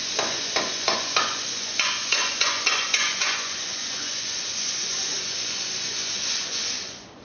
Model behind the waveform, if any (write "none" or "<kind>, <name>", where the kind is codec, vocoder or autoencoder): vocoder, Vocos